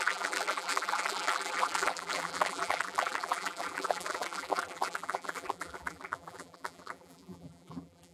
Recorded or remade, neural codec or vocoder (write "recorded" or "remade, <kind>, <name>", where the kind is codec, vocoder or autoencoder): remade, vocoder, BigVGAN v2